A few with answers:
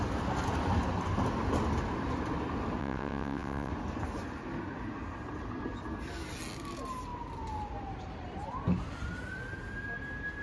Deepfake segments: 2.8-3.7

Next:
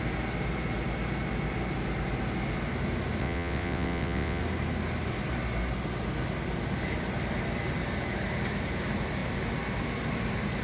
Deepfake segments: 3.2-4.4

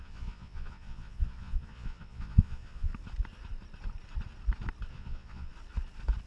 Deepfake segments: 0.0-2.9; 4.9-5.5

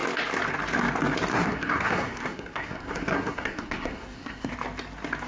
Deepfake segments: 1.3-4.5

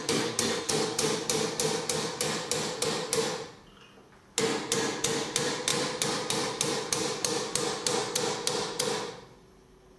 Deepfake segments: 0.0-0.7

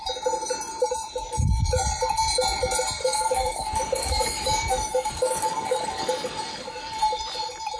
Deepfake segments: 3.0-7.0

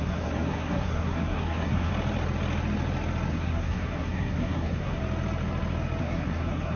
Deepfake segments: 0.0-1.9; 3.3-5.0; 6.0-6.8

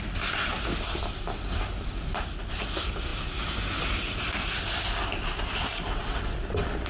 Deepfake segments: none